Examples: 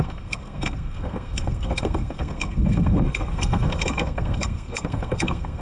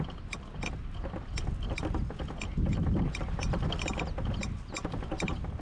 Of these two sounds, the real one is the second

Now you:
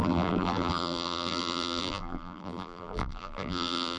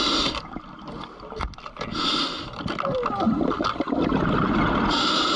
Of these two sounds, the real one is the second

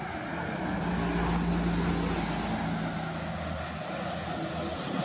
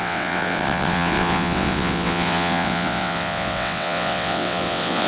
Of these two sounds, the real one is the first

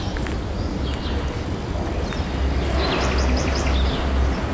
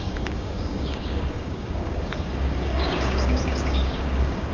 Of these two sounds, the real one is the first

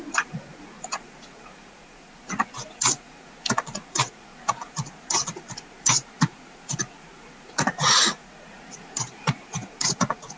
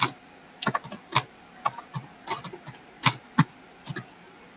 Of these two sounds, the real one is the second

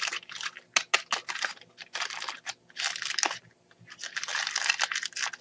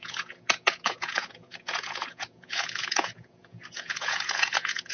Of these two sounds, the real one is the first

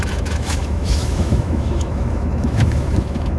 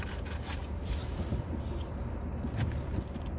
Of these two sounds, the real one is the second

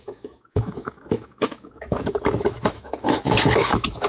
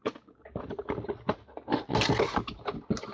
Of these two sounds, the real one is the second